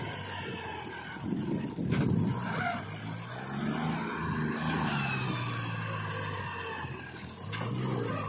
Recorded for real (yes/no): yes